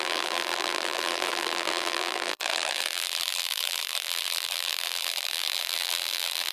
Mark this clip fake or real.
fake